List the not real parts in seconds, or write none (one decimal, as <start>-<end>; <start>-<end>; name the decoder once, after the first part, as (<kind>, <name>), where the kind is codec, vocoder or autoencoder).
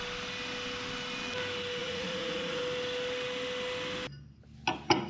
1.8-2.6 (vocoder, Vocos)